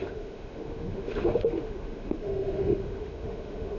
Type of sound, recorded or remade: remade